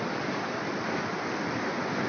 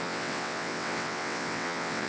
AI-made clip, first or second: second